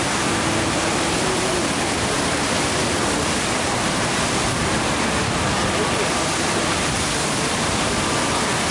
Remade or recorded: recorded